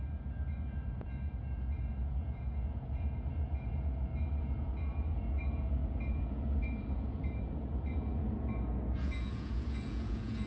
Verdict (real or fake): fake